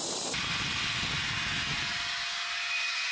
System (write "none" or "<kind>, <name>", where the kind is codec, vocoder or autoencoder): none